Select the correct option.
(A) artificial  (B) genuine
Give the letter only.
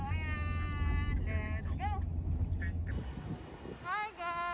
B